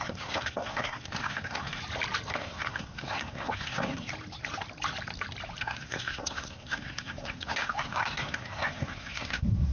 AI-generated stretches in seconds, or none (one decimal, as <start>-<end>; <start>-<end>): 0.0-1.8; 2.3-4.1; 5.6-9.7